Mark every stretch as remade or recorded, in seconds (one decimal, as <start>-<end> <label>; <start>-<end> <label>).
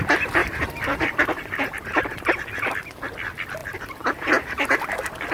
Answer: 0.0-0.4 recorded; 0.4-2.5 remade; 2.5-3.6 recorded; 3.6-4.8 remade; 4.8-5.3 recorded